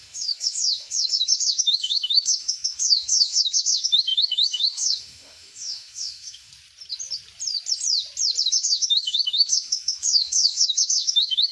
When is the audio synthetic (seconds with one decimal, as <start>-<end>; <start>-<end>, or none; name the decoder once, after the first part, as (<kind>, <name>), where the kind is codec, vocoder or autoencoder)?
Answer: 0.0-6.5 (autoencoder, DAC-VAE); 8.5-11.5